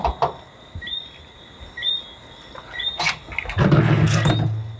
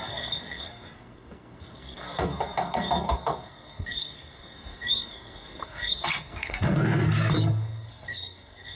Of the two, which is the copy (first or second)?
second